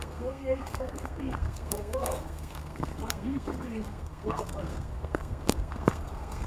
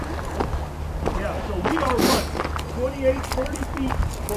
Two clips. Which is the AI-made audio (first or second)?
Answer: first